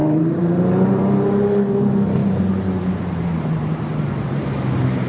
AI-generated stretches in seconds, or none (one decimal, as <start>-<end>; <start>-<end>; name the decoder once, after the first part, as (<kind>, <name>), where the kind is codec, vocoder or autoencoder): 0.0-0.9 (vocoder, BigVGAN v2); 2.2-5.1